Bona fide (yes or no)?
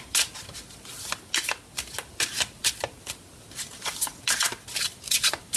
yes